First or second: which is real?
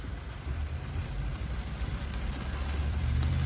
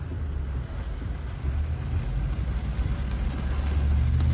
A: second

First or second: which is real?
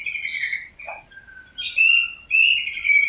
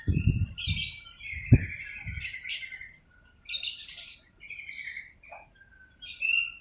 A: first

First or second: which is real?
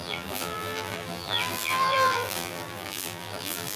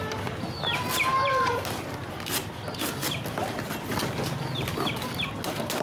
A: second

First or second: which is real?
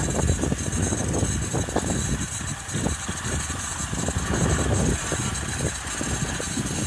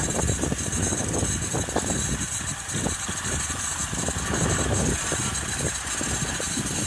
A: first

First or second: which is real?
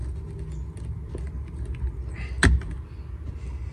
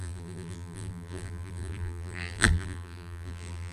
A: first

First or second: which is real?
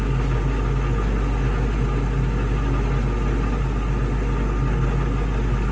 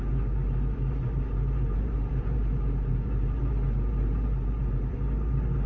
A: first